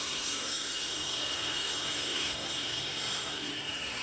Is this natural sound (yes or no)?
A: no